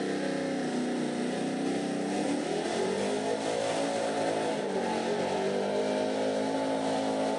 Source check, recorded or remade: recorded